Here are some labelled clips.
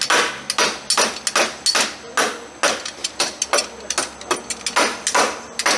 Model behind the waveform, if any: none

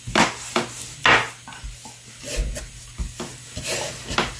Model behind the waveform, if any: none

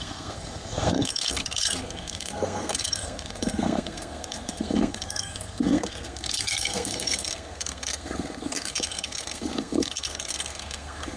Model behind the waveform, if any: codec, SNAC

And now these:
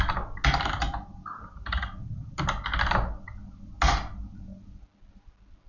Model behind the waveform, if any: none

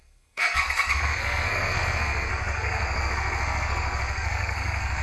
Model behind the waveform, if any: codec, SNAC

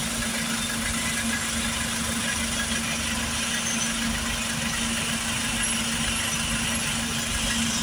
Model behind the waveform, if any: none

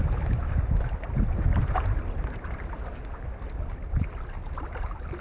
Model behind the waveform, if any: none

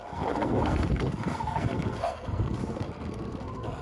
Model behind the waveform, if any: codec, SNAC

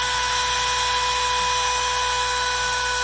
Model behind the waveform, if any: none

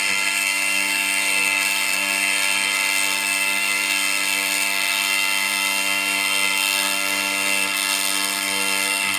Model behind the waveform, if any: codec, SNAC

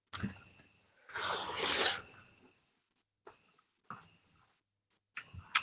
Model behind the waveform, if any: none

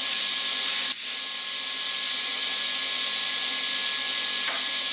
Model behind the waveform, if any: none